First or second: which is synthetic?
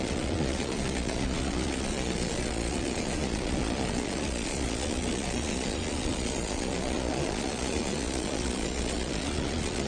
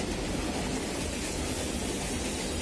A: first